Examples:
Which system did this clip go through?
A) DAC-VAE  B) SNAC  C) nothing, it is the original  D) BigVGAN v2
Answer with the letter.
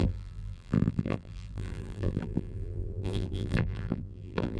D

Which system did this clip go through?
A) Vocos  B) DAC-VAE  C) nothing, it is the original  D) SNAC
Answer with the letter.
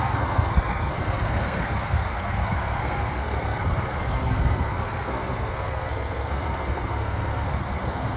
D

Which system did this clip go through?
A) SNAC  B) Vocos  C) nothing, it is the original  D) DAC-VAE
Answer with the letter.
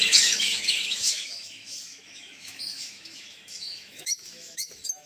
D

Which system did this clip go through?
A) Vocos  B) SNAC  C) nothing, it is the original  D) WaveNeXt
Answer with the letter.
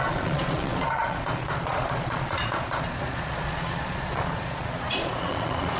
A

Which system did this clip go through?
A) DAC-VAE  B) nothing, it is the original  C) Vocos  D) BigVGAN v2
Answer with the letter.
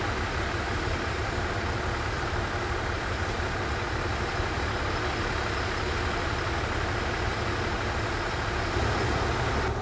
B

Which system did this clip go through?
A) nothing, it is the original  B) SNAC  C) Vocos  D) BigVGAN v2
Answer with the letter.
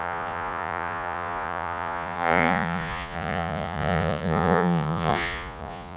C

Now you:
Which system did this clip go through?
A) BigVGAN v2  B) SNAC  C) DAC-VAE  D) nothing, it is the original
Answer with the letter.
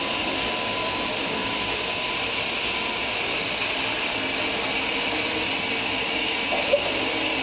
D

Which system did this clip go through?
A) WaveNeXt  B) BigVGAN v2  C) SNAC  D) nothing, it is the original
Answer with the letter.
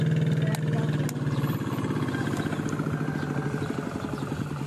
D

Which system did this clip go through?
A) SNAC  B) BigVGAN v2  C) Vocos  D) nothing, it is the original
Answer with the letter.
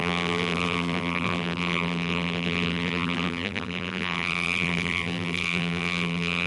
B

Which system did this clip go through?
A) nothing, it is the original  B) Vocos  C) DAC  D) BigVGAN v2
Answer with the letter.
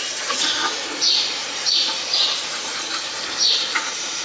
D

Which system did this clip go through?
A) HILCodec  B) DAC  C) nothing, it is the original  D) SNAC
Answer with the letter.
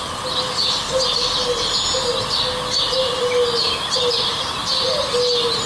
C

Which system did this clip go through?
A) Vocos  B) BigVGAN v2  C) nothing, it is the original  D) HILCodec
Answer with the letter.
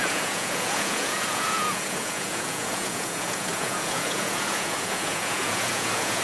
A